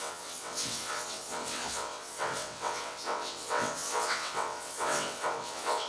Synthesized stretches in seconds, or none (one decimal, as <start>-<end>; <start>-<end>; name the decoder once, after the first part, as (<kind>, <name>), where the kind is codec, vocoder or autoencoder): 0.0-5.9 (vocoder, WaveNeXt)